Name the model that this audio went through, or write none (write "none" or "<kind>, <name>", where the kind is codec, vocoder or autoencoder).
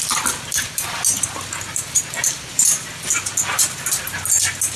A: none